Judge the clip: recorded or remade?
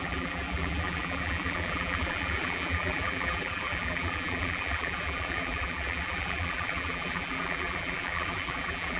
remade